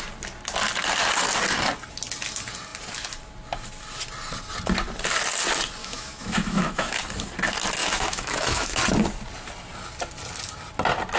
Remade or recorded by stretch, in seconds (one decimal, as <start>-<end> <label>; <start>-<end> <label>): 0.0-5.8 recorded; 5.8-7.0 remade; 7.0-7.8 recorded; 7.8-8.8 remade; 8.8-11.2 recorded